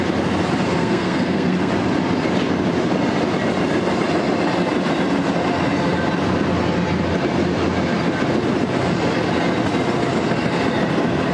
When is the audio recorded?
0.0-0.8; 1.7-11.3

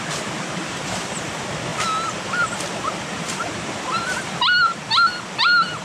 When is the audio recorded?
0.0-5.8